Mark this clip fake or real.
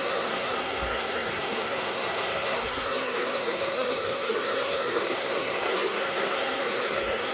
fake